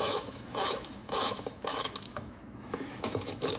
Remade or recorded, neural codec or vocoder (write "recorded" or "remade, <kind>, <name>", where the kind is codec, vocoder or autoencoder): remade, autoencoder, DAC-VAE